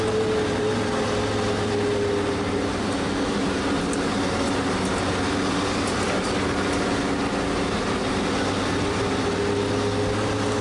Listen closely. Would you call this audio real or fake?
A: real